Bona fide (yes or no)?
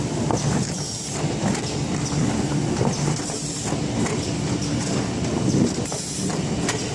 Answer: yes